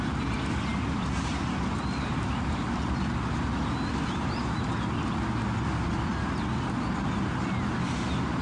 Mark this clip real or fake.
real